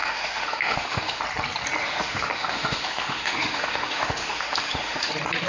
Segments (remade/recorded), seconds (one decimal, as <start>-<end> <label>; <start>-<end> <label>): 0.0-1.2 remade; 1.2-1.8 recorded; 1.8-5.1 remade; 5.1-5.5 recorded